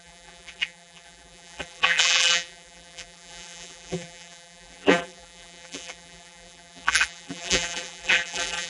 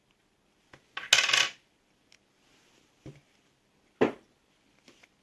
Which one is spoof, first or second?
first